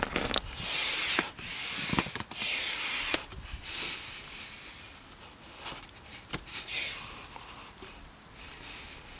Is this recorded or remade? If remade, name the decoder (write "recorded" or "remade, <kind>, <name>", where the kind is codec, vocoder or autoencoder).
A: recorded